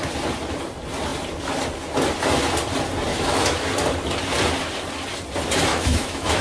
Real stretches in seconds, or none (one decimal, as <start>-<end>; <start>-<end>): 0.0-3.1; 3.7-5.7

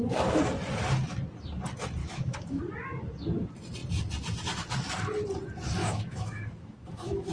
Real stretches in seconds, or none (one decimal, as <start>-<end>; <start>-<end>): 0.0-2.0; 2.6-5.8

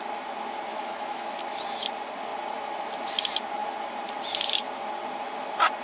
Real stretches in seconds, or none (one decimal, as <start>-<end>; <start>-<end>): 0.0-0.7; 1.4-5.8